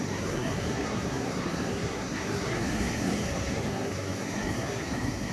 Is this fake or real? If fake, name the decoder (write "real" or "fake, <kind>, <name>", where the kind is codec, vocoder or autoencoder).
fake, codec, SNAC